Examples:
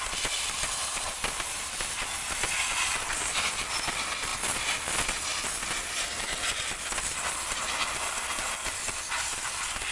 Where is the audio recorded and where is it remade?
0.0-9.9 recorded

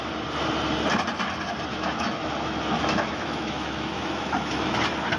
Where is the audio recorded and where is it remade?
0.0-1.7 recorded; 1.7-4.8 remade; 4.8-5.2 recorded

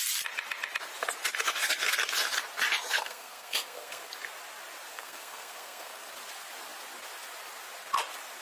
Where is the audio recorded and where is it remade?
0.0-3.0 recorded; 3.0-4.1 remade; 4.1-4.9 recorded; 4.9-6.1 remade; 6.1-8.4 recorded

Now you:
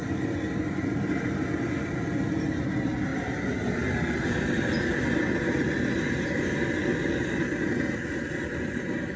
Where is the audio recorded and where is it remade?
0.0-9.2 recorded

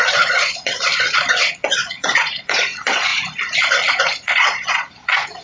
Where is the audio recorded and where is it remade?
0.0-0.9 remade; 0.9-1.5 recorded; 1.5-3.1 remade; 3.1-3.9 recorded; 3.9-5.4 remade

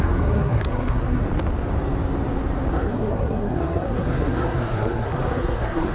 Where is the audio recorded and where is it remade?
0.0-1.2 remade; 1.2-2.7 recorded; 2.7-5.9 remade